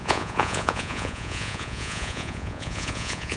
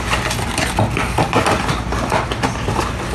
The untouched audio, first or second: second